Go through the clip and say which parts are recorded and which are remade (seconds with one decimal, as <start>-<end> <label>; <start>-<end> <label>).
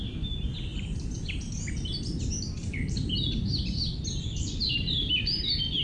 0.0-0.7 recorded; 0.7-2.0 remade; 2.0-2.6 recorded; 2.6-5.2 remade; 5.2-5.8 recorded